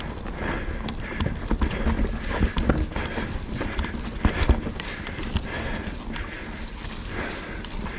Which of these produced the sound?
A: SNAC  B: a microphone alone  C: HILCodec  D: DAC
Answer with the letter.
B